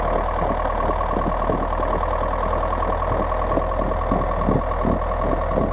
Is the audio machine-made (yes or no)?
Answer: no